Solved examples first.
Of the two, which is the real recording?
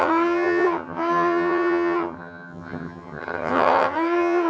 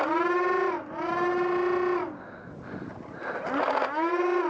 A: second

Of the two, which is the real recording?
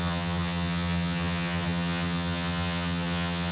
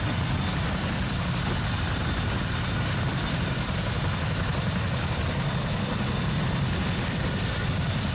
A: second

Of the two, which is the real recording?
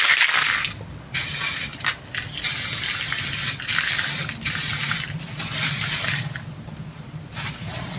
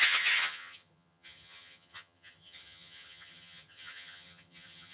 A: first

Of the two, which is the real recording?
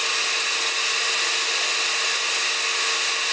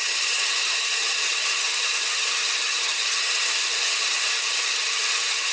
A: first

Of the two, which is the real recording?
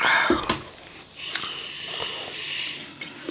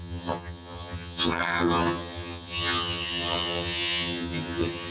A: first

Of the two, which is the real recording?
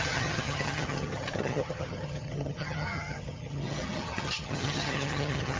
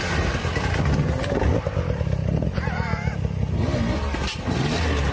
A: second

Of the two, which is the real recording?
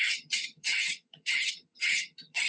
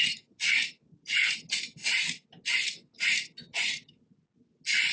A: second